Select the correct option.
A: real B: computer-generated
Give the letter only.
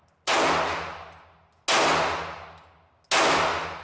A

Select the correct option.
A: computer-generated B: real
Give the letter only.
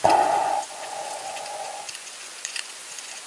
A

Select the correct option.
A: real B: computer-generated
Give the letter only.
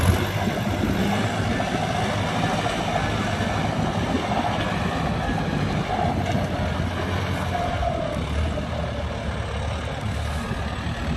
A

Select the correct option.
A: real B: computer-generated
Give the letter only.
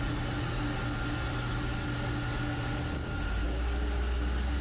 A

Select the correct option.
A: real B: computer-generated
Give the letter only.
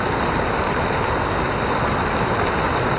A